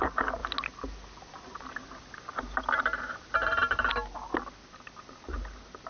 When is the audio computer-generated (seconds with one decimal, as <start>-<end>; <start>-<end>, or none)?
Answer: none